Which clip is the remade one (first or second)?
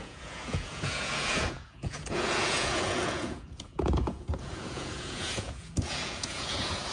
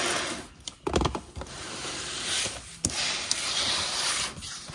first